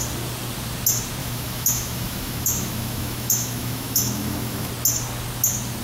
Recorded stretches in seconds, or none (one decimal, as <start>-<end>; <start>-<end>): 0.0-1.2; 4.7-5.8